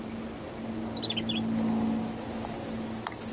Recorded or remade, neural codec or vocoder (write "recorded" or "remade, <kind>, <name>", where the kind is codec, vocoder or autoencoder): recorded